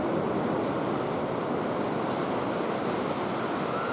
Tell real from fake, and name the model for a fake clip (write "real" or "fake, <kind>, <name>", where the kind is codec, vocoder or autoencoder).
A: real